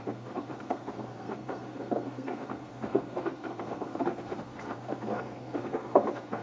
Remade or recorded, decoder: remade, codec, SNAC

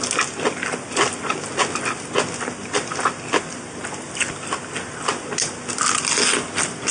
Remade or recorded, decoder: recorded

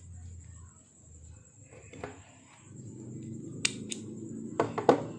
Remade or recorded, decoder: recorded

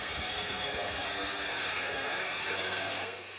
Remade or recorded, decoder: remade, codec, SNAC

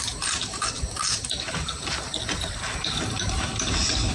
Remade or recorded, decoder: recorded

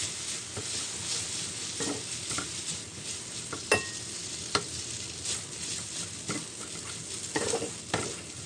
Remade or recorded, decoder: recorded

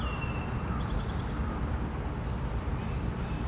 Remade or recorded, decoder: recorded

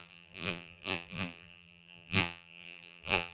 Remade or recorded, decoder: remade, vocoder, BigVGAN v2